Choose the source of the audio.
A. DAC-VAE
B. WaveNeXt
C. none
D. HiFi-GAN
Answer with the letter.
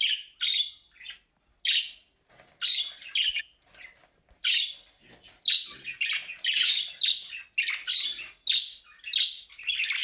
C